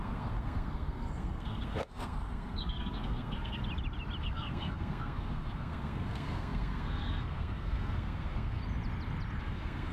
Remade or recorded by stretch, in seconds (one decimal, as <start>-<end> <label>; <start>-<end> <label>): 0.0-3.6 remade; 3.6-4.2 recorded; 4.2-8.6 remade; 8.6-9.4 recorded; 9.4-9.9 remade